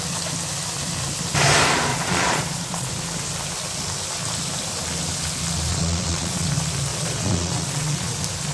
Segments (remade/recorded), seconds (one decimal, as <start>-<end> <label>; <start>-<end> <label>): 0.0-1.9 recorded; 1.9-2.9 remade; 2.9-5.7 recorded; 5.7-6.5 remade; 6.5-6.9 recorded; 6.9-8.1 remade; 8.1-8.5 recorded